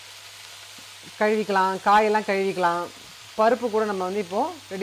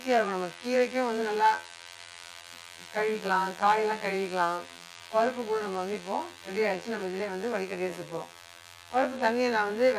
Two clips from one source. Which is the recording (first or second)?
first